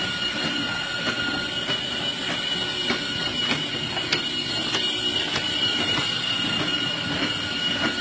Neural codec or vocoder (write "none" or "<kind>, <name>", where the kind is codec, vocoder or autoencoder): none